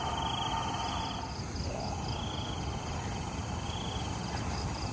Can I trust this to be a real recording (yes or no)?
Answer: yes